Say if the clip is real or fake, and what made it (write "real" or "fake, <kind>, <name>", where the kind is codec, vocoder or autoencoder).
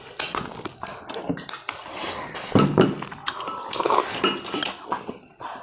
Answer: real